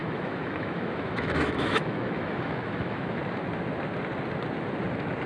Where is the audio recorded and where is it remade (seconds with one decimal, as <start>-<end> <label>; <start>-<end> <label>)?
0.0-3.2 remade; 3.2-5.3 recorded